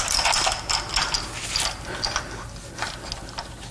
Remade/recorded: recorded